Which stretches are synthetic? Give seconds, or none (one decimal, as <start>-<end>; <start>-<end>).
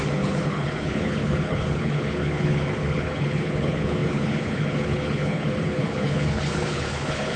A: 0.0-7.4